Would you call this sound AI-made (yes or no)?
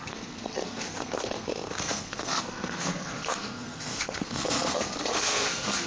yes